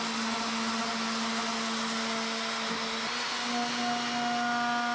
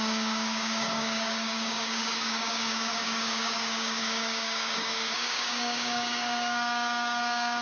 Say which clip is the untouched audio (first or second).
first